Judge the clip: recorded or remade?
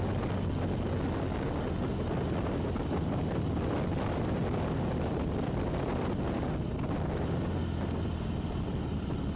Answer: recorded